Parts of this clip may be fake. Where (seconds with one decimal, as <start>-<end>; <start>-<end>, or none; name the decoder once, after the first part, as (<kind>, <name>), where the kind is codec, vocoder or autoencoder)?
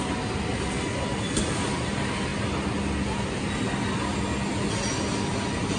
none